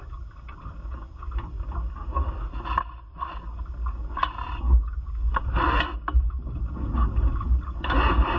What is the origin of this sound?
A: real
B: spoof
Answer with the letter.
A